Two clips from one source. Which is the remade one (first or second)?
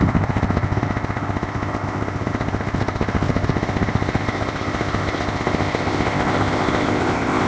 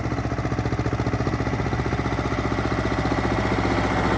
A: first